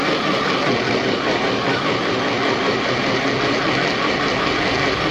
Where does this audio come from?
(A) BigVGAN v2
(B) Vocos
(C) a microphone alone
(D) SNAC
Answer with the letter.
C